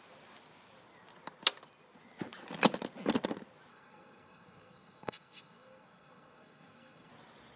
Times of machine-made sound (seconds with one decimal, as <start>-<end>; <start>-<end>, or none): 3.7-7.1